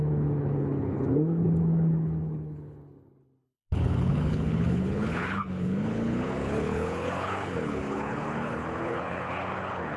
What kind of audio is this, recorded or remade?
remade